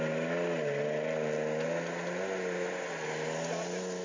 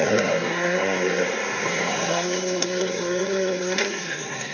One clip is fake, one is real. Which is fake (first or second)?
second